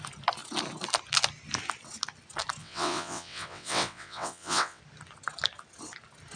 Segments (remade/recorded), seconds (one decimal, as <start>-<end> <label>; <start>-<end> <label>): 0.0-2.6 recorded; 2.6-4.8 remade; 4.8-6.4 recorded